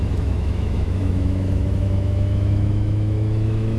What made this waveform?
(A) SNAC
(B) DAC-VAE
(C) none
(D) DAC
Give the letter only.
B